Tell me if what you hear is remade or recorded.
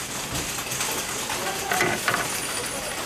recorded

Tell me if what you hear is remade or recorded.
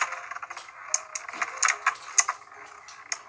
recorded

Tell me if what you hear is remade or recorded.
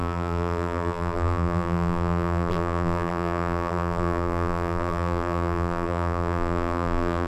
remade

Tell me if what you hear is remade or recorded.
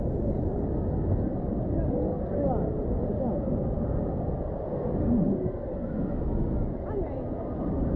recorded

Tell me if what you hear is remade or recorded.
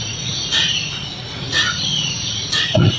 remade